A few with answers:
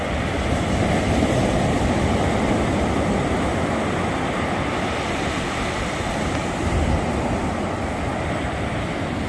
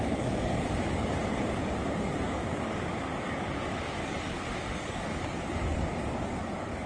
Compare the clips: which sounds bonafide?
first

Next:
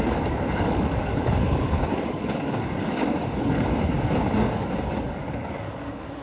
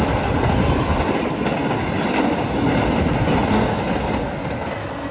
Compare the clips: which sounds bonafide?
second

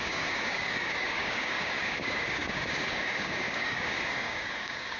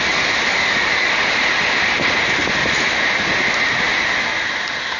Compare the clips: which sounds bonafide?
second